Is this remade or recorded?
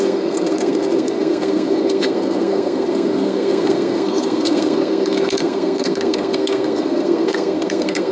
remade